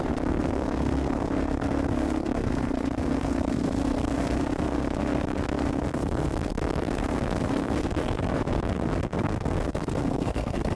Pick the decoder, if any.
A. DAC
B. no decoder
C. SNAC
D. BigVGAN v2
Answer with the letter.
C